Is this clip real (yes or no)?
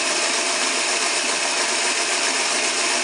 yes